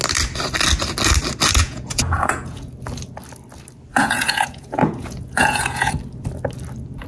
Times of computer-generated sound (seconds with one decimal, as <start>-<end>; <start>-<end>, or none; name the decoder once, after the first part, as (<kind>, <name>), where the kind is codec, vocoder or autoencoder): 1.6-2.7 (vocoder, Vocos); 3.9-5.9